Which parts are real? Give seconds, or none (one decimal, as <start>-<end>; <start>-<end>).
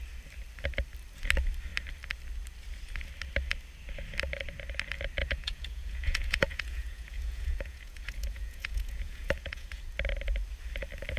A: 0.0-5.2; 9.8-11.2